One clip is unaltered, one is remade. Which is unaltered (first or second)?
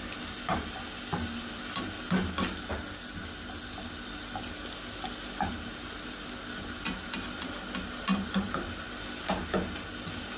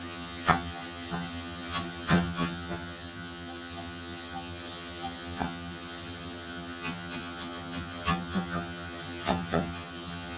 first